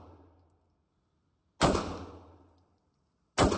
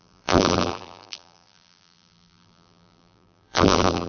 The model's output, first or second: second